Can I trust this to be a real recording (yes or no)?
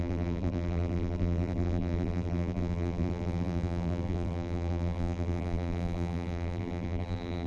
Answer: no